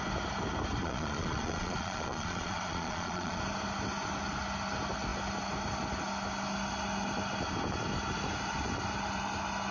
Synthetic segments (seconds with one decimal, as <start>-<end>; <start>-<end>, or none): 0.8-3.4